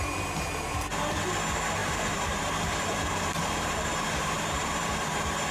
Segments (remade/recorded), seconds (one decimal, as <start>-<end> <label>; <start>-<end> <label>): 0.0-1.8 recorded; 1.8-5.1 remade; 5.1-5.5 recorded